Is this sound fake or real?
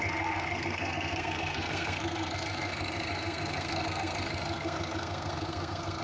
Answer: fake